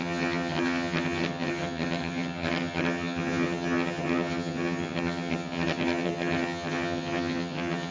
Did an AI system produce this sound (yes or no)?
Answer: yes